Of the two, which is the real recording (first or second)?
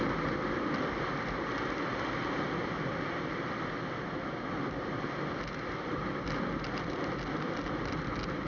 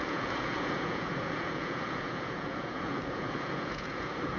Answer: first